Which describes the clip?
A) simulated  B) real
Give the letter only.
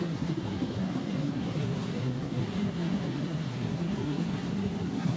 A